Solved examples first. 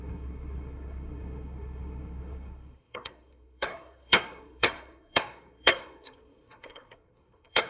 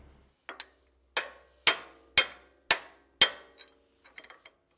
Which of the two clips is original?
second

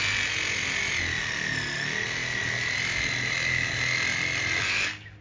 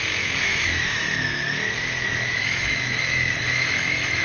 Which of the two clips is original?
first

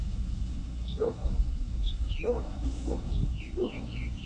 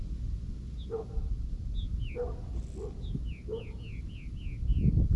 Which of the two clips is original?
second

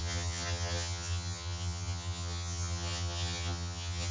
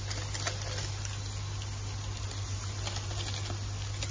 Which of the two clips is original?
second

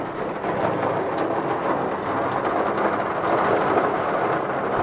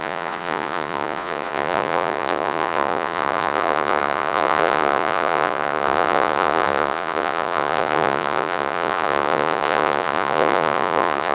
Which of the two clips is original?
first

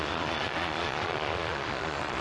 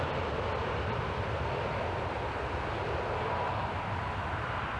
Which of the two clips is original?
second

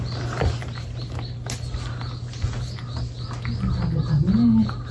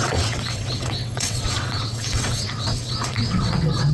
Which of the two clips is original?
first